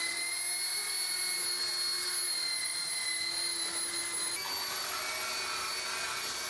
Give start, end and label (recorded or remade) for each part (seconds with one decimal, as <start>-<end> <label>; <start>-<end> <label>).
0.0-6.5 recorded